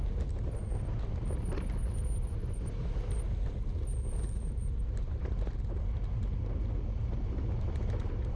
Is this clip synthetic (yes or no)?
no